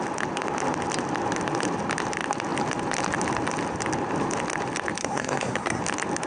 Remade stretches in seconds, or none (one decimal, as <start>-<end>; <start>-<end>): 5.0-5.8